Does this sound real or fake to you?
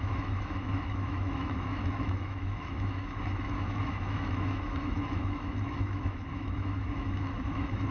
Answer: fake